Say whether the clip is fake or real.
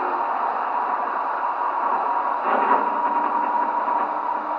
real